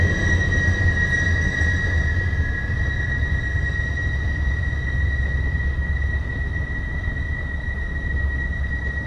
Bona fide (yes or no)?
yes